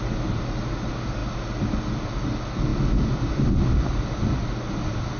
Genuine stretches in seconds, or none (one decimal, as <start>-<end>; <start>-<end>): 0.0-5.2